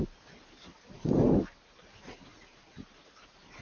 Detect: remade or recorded recorded